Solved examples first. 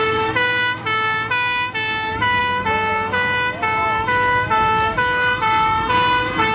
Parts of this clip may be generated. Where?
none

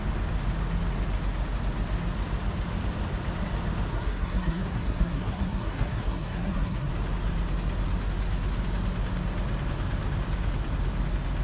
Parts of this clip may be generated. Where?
3.9-6.9 (codec, SNAC)

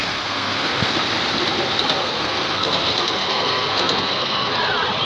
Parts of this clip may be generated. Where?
0.0-0.9 (codec, SNAC); 2.0-4.6

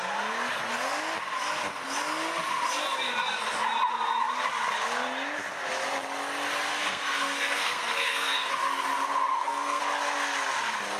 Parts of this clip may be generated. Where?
6.7-8.5 (codec, SNAC); 9.3-9.8

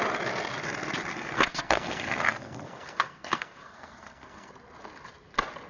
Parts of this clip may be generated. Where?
1.1-4.5 (codec, SNAC)